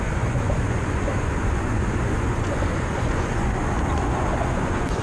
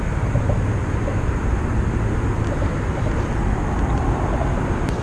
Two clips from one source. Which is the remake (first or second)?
first